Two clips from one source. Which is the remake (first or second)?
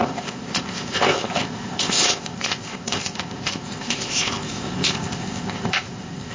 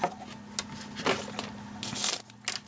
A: first